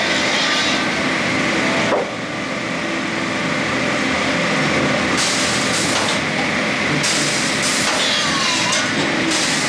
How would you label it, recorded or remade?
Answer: recorded